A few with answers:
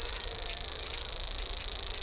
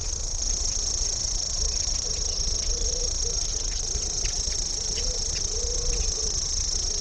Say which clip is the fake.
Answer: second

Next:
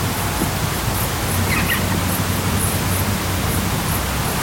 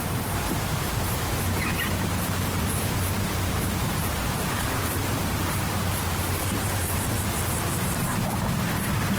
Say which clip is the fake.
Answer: second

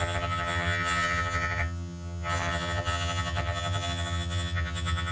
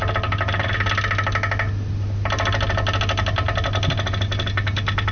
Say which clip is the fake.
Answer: first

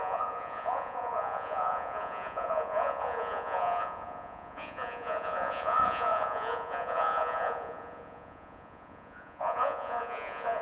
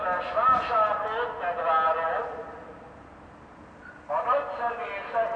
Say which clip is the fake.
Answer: first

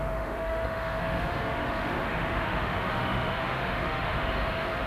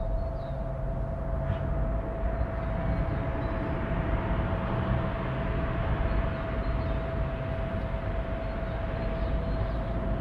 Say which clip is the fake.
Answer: first